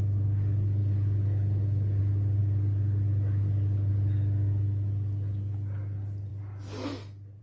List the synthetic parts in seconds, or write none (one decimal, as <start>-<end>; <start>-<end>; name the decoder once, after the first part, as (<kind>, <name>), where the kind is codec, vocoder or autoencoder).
none